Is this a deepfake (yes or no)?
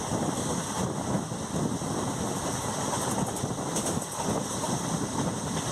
no